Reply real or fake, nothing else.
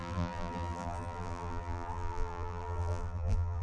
fake